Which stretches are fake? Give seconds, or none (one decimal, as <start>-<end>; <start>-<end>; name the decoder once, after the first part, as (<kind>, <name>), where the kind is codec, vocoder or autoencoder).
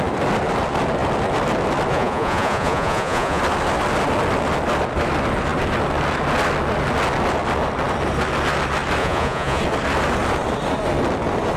1.9-3.4 (vocoder, Vocos); 9.0-9.6